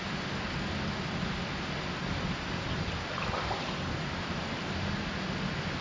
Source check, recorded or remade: recorded